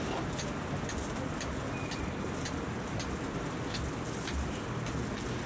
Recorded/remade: recorded